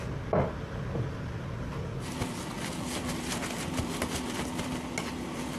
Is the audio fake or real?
real